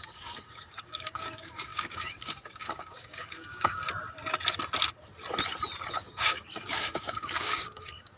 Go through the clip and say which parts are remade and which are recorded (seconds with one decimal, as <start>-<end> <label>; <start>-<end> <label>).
0.0-3.8 remade; 3.8-5.9 recorded; 5.9-8.2 remade